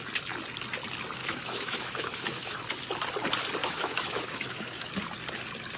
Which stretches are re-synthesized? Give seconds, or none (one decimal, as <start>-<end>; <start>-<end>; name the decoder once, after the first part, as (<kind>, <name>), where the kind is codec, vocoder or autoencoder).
1.2-2.6 (autoencoder, DAC-VAE); 3.6-4.9